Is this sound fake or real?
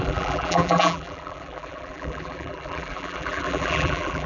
fake